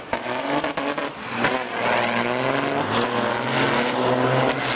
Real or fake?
real